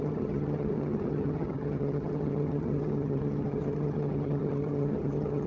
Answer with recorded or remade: remade